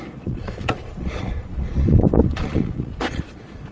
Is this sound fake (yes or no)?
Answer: yes